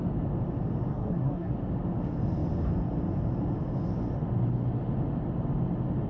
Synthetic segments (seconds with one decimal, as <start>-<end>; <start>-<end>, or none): 0.9-1.5